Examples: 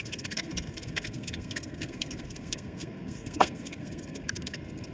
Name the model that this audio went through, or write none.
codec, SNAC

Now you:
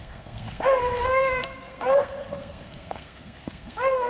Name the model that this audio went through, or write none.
codec, SNAC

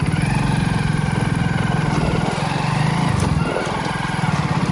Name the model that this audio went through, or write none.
none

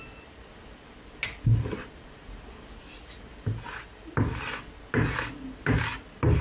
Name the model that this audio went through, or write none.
none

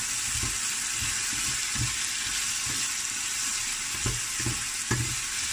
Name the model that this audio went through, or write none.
none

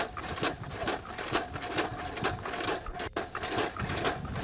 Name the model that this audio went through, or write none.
none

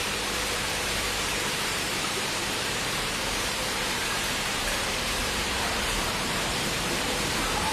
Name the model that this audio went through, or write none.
vocoder, BigVGAN v2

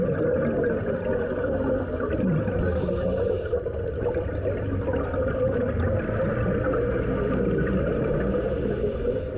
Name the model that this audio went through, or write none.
none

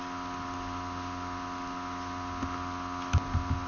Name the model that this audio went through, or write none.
none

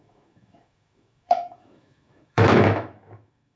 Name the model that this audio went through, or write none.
autoencoder, DAC-VAE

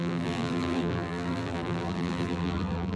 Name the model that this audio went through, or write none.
vocoder, BigVGAN v2